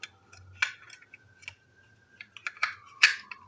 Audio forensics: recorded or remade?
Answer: recorded